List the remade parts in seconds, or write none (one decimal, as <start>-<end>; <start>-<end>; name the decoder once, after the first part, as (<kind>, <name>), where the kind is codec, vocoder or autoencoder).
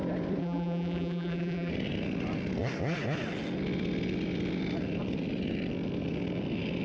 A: 0.4-1.7 (vocoder, BigVGAN v2)